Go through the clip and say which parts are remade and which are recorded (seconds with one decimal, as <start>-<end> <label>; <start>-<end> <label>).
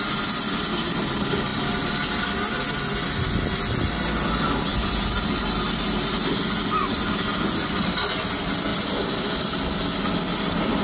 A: 0.0-10.8 recorded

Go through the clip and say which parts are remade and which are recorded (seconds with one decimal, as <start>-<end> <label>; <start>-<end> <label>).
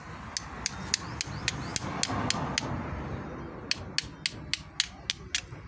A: 0.0-5.7 recorded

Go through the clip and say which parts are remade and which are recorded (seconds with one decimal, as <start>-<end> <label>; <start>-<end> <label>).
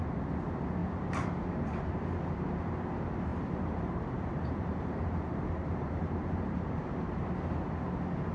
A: 0.0-3.3 recorded; 3.3-7.7 remade; 7.7-8.3 recorded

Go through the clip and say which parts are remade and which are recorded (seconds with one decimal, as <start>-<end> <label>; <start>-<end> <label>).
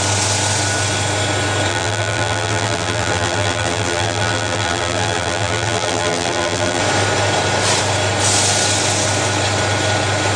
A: 0.0-1.7 recorded; 1.7-6.8 remade; 6.8-10.4 recorded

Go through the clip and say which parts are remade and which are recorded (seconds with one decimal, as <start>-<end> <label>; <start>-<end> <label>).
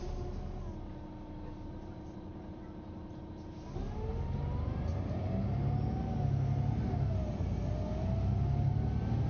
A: 0.0-4.1 recorded; 4.1-5.2 remade; 5.2-9.3 recorded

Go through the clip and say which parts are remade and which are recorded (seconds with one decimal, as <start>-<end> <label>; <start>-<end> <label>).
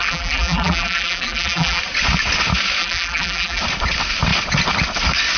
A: 0.0-1.8 remade; 1.8-2.8 recorded; 2.8-3.6 remade; 3.6-5.4 recorded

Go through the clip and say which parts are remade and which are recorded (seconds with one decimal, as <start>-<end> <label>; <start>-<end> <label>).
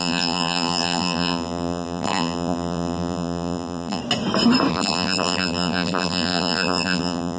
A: 0.0-4.0 remade; 4.0-4.7 recorded; 4.7-7.4 remade